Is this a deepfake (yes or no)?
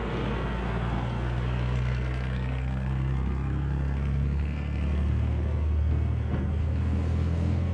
yes